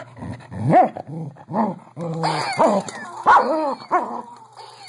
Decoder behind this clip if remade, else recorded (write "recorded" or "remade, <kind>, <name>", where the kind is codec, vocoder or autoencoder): recorded